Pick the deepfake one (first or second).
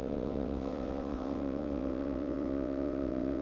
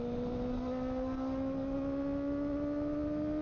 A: first